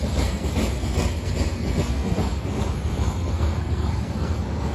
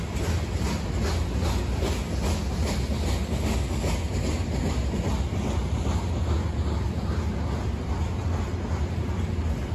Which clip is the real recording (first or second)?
second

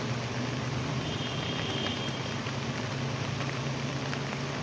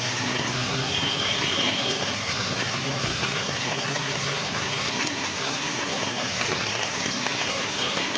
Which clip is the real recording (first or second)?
first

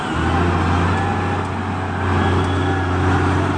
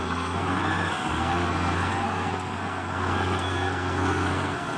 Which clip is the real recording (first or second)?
first